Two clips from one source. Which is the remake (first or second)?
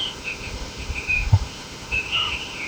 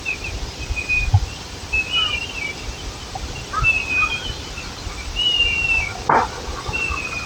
first